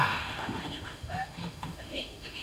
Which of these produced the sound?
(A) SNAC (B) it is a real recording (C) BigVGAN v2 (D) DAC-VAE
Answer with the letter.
D